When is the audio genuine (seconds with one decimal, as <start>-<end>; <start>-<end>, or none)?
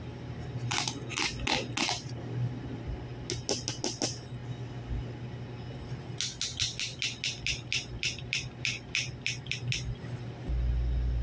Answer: 0.0-11.2